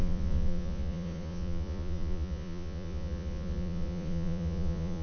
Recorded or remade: remade